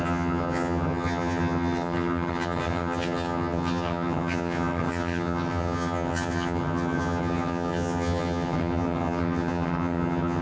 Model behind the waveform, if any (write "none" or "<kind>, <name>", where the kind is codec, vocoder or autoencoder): vocoder, HiFi-GAN